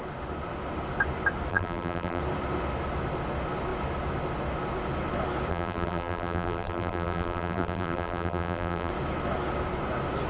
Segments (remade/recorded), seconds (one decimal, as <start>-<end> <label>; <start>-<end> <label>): 0.0-1.5 recorded; 1.5-2.2 remade; 2.2-5.5 recorded; 5.5-8.9 remade; 8.9-10.3 recorded

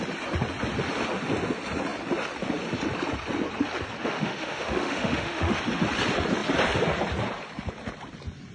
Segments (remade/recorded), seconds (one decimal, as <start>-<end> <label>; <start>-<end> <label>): 0.0-4.0 recorded; 4.0-5.6 remade; 5.6-8.5 recorded

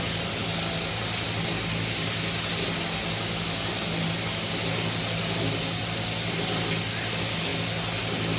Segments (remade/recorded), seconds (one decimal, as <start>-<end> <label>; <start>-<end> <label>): 0.0-8.4 recorded

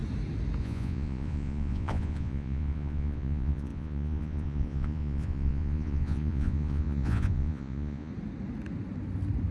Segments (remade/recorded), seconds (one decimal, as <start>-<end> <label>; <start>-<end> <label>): 0.0-0.6 recorded; 0.6-8.1 remade; 8.1-9.5 recorded

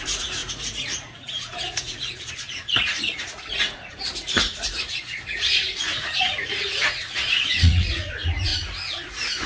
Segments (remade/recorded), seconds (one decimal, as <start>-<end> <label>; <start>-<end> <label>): 0.0-8.5 remade; 8.5-9.1 recorded; 9.1-9.5 remade